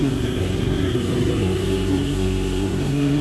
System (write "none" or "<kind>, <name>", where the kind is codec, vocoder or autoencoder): codec, SNAC